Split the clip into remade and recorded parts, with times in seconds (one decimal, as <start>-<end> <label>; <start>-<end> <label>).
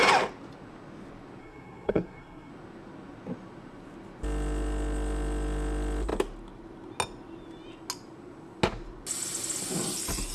0.0-1.4 recorded; 1.4-2.5 remade; 2.5-10.3 recorded